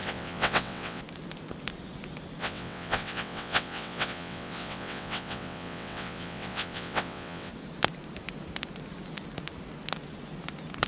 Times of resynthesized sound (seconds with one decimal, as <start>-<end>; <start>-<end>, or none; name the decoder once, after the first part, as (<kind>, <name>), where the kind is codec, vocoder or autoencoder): 0.0-1.0 (vocoder, WaveNeXt); 2.4-7.5